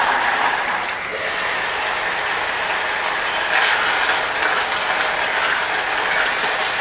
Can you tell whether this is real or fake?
real